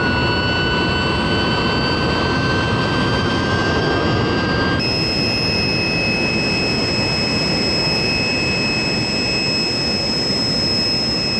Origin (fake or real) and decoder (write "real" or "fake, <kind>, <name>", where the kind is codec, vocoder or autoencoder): real